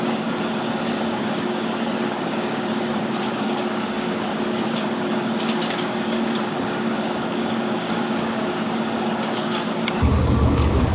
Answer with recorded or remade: remade